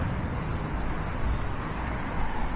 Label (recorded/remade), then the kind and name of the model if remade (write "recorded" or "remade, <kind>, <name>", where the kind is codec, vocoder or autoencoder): recorded